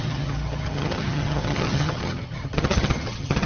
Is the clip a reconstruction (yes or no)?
yes